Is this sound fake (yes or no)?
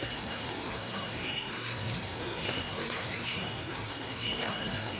yes